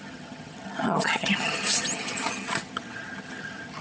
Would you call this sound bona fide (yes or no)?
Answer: no